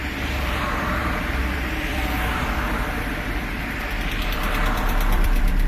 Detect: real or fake fake